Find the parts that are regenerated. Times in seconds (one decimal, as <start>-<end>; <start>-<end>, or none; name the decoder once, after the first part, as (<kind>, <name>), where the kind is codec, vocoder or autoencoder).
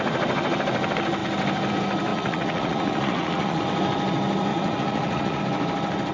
2.1-3.6 (vocoder, Vocos); 4.5-5.4